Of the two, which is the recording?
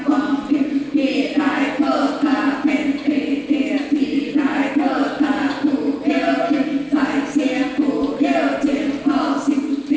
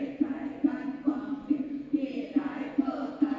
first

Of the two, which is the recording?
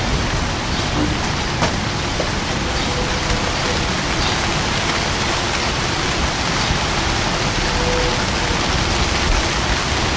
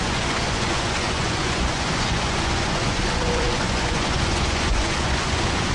first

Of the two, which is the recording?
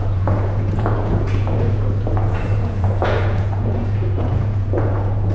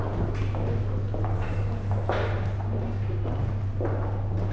second